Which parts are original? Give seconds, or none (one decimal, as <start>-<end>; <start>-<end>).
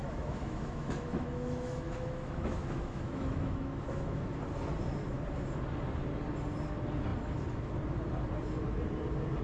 4.3-9.4